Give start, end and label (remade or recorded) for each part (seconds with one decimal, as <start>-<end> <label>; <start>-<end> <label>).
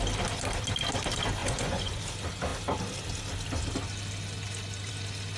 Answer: 0.0-1.4 recorded; 1.4-2.0 remade; 2.0-5.4 recorded